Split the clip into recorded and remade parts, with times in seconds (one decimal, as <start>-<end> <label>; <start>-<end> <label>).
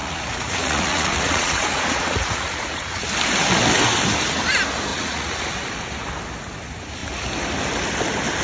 0.0-3.1 remade; 3.1-4.9 recorded; 4.9-5.4 remade; 5.4-8.4 recorded